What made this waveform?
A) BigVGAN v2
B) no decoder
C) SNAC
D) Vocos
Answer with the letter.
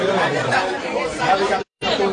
A